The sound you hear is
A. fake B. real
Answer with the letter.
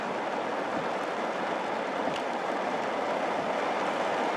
B